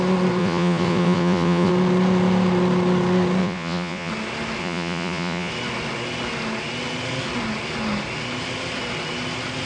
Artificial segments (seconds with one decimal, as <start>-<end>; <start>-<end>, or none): 0.4-1.7; 3.4-4.1; 4.6-5.5